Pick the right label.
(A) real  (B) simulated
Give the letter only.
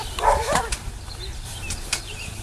B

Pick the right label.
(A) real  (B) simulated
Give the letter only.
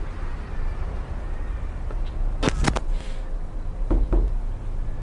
A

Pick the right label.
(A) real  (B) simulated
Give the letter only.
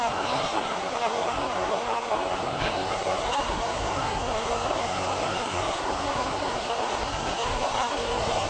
B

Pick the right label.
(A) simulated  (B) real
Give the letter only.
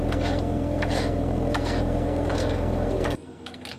A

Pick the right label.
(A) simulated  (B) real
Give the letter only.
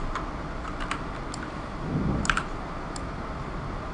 B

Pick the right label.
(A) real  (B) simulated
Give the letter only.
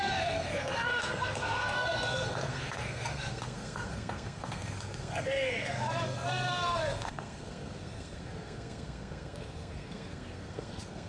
B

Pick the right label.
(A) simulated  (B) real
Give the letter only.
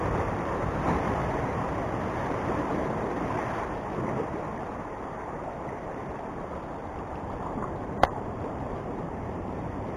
A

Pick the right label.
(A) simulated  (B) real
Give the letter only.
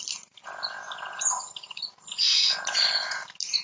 B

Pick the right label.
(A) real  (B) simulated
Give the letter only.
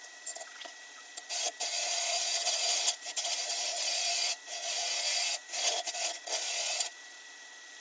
B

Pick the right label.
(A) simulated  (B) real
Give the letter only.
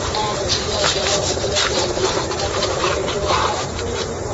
A